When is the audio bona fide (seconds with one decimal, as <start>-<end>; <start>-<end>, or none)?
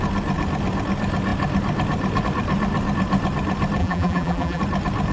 0.0-3.8; 4.6-5.1